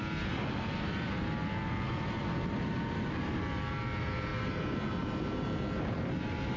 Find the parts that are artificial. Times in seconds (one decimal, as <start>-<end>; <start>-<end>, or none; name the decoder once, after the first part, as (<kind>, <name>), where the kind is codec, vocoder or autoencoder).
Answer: none